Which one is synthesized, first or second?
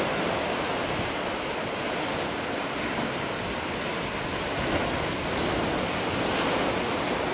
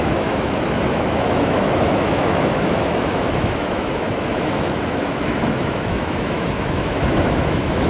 second